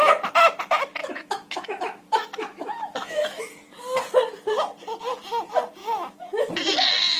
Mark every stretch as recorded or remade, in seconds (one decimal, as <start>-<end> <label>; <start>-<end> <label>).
0.0-1.0 recorded; 1.0-3.4 remade; 3.4-5.8 recorded; 5.8-6.5 remade; 6.5-7.2 recorded